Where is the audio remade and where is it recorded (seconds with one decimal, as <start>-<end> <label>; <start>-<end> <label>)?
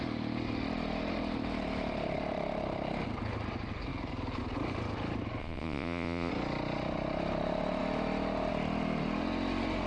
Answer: 0.0-5.4 recorded; 5.4-6.3 remade; 6.3-9.9 recorded